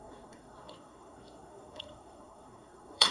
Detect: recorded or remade remade